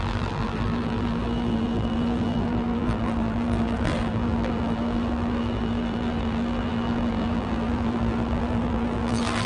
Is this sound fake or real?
fake